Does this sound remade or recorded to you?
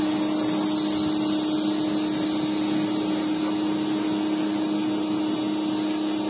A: recorded